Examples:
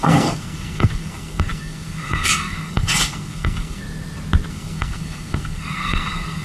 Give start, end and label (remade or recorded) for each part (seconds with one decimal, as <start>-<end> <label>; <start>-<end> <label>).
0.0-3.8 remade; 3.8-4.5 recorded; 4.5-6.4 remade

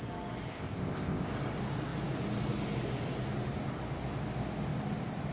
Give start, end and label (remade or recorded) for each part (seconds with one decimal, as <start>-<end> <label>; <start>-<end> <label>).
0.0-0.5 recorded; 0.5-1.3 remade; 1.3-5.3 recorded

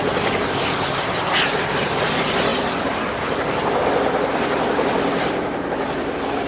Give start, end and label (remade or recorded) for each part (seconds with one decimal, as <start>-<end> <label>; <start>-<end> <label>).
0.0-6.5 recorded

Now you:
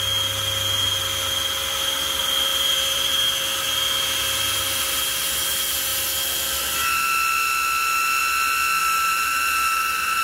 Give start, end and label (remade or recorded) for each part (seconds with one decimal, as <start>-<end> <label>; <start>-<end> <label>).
0.0-2.5 recorded; 2.5-3.3 remade; 3.3-8.8 recorded; 8.8-10.2 remade